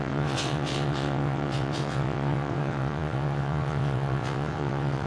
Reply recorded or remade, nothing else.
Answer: remade